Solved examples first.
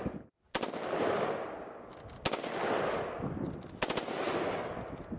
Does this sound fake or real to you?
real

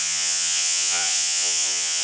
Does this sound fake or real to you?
fake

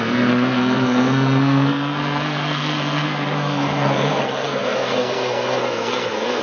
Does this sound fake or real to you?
fake